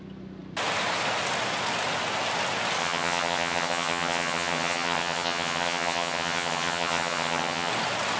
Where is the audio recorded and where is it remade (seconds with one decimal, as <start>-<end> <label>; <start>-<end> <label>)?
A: 0.0-2.8 recorded; 2.8-7.7 remade; 7.7-8.2 recorded